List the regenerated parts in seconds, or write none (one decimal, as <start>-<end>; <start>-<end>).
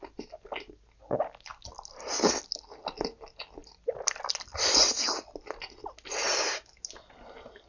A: none